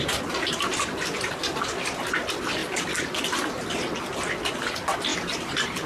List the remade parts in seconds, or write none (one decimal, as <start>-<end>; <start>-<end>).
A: 5.1-5.9